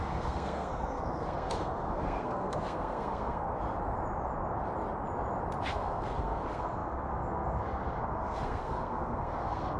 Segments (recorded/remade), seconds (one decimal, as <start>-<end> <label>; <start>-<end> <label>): 0.0-3.5 remade; 3.5-5.7 recorded; 5.7-9.8 remade